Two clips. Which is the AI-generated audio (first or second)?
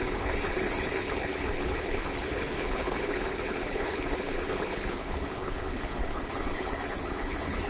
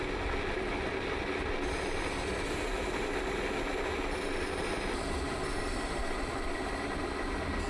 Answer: first